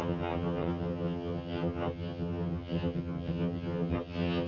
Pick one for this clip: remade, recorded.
remade